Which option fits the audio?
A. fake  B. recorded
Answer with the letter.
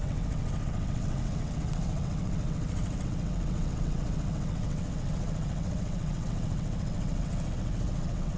A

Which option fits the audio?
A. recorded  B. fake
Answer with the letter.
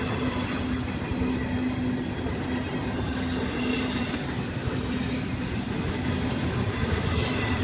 A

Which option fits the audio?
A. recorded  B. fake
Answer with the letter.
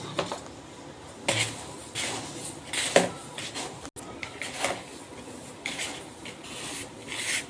A